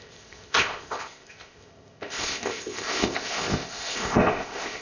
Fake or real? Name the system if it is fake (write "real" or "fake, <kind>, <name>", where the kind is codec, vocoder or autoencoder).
fake, codec, ZipCodec